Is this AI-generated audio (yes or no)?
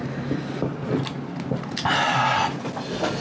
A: no